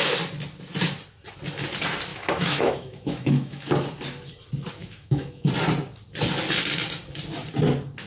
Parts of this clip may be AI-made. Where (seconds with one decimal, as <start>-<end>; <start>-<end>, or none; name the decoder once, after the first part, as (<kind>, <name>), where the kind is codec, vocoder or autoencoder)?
2.1-3.7 (autoencoder, DAC-VAE); 4.8-5.5